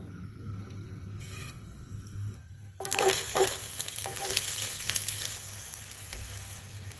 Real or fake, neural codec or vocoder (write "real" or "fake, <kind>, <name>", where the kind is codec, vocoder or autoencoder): fake, codec, SNAC